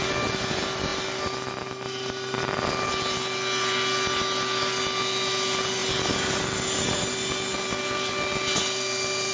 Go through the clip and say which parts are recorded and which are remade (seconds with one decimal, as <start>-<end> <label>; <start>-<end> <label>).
0.0-9.3 recorded

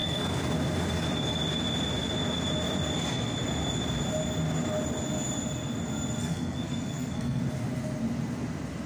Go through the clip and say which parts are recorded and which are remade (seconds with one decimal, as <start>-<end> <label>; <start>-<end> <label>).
0.0-0.5 remade; 0.5-6.2 recorded; 6.2-7.4 remade; 7.4-8.9 recorded

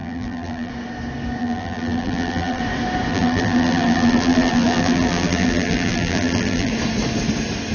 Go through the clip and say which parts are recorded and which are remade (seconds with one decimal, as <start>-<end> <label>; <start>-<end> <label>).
0.0-0.7 remade; 0.7-1.4 recorded; 1.4-2.6 remade; 2.6-3.1 recorded; 3.1-6.7 remade; 6.7-7.7 recorded

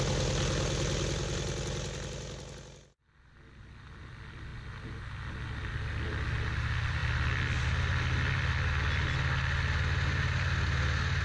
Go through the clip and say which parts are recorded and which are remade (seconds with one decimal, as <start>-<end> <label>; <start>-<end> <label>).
0.0-11.2 recorded